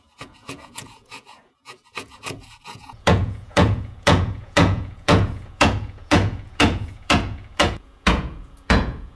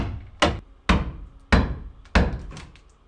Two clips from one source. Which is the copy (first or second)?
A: first